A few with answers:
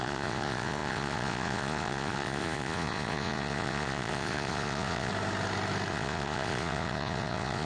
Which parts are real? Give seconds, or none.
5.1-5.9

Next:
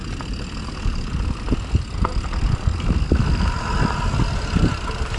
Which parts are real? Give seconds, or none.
0.0-5.2